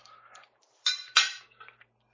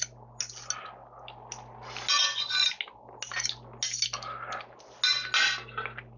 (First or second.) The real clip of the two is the second